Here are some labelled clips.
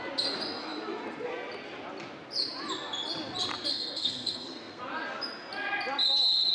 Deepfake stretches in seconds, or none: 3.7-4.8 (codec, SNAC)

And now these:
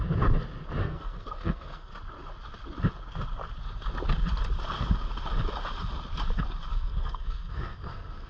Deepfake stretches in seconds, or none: 0.8-1.9 (codec, SNAC); 6.7-8.3

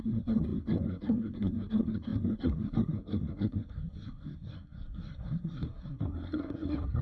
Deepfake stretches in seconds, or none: 0.0-7.0 (codec, SNAC)

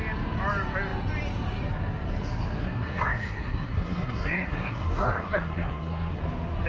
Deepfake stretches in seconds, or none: 2.6-6.2 (codec, SNAC)